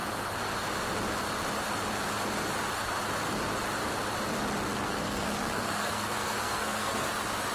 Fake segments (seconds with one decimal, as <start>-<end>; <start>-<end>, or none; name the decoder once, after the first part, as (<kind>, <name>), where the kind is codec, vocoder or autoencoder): 4.7-7.1 (codec, SNAC)